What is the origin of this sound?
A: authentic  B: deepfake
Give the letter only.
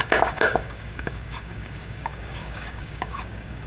B